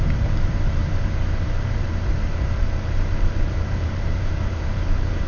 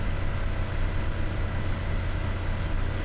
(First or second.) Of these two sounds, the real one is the second